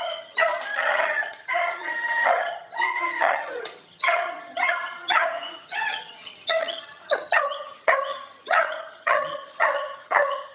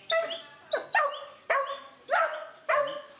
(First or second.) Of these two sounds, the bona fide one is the second